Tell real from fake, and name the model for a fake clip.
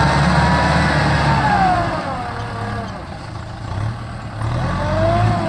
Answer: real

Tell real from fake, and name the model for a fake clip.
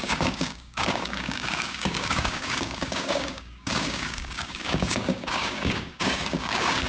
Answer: fake, codec, DAC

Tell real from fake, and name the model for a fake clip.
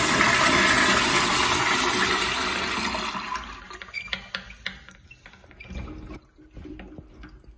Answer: real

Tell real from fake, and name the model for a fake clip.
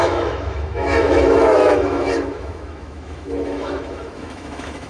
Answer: fake, autoencoder, DAC-VAE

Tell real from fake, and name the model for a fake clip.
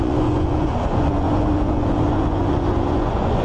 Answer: fake, vocoder, Vocos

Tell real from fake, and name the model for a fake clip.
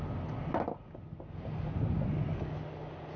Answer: real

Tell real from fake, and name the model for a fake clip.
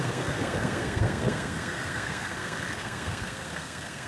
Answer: fake, codec, SNAC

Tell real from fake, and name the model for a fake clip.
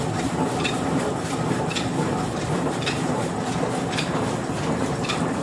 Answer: fake, vocoder, BigVGAN v2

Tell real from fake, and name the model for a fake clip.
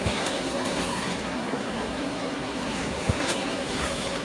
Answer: fake, codec, SNAC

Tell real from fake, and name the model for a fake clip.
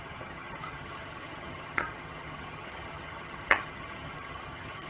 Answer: fake, vocoder, HiFi-GAN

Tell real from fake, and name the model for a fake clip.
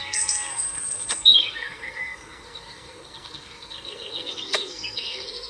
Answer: fake, codec, SNAC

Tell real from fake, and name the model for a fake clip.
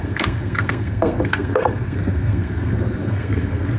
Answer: fake, codec, SNAC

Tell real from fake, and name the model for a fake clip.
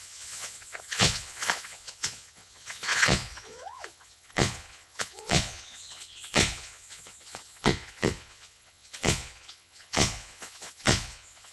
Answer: fake, vocoder, Vocos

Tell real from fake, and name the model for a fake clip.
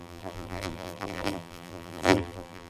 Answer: fake, vocoder, BigVGAN v2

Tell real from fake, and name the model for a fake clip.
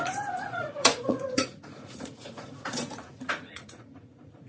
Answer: fake, vocoder, Vocos